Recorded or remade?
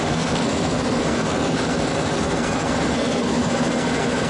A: remade